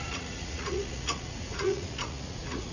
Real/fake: fake